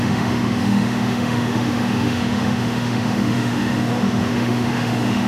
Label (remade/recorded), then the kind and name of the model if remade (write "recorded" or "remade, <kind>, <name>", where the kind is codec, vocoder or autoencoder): remade, autoencoder, DAC-VAE